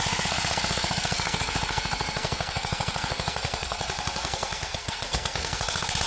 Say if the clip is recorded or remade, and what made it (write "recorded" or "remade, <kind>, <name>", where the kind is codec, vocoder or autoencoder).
remade, codec, SNAC